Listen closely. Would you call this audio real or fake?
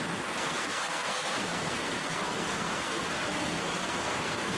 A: fake